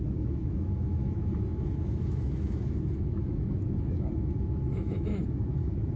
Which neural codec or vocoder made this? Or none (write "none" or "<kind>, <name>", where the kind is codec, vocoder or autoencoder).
autoencoder, DAC-VAE